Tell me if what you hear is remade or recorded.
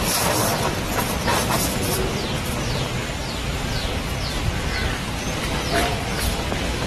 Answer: recorded